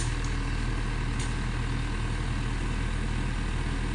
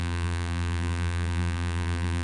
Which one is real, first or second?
first